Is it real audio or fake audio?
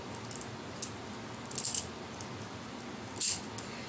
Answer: real